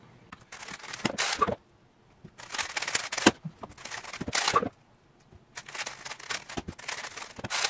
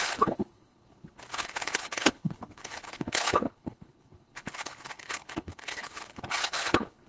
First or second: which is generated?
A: second